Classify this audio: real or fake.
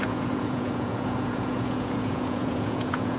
fake